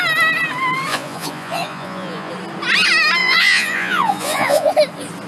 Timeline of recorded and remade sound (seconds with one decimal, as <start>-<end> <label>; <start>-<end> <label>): 0.0-0.9 recorded; 0.9-2.3 remade; 2.3-3.2 recorded; 3.2-4.7 remade; 4.7-5.3 recorded